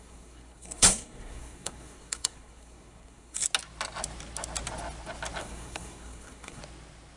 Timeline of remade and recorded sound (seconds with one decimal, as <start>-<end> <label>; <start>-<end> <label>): 0.0-3.4 remade; 3.4-5.4 recorded; 5.4-6.6 remade; 6.6-7.2 recorded